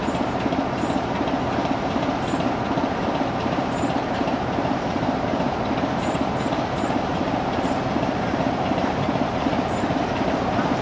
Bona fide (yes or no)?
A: no